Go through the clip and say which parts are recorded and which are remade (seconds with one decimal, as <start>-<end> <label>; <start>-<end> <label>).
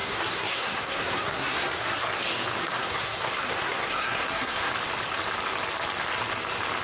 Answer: 0.0-2.2 remade; 2.2-2.6 recorded; 2.6-4.7 remade; 4.7-6.8 recorded